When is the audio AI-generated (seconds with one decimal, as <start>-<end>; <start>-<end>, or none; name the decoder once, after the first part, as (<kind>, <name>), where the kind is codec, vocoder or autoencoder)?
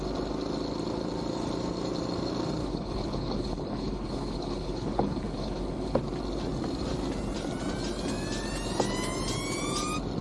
2.6-6.0 (codec, HILCodec)